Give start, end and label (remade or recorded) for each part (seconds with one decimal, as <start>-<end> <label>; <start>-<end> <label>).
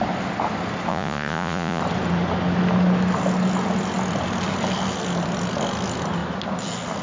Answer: 0.0-0.9 recorded; 0.9-1.8 remade; 1.8-7.0 recorded